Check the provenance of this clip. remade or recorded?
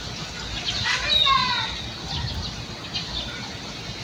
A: recorded